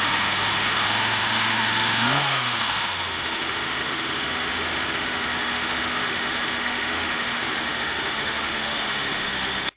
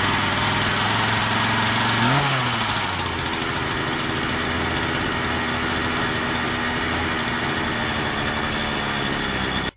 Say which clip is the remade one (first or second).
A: first